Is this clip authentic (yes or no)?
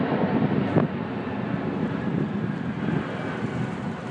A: yes